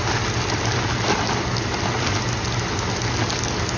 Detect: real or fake real